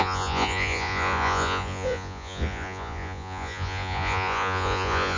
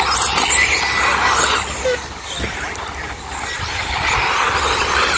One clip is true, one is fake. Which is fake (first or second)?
first